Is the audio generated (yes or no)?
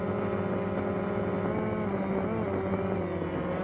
no